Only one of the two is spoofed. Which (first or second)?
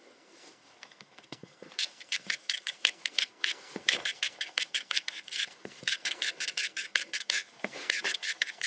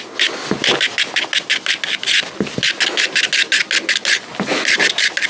first